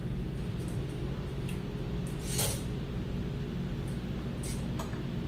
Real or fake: real